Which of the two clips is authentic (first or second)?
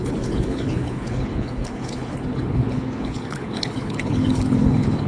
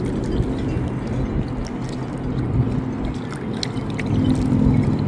second